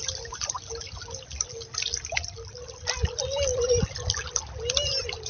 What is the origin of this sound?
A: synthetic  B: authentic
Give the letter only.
B